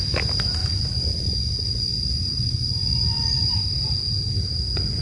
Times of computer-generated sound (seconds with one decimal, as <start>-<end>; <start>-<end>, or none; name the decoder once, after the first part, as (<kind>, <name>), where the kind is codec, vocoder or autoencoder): 0.6-3.5 (vocoder, Vocos)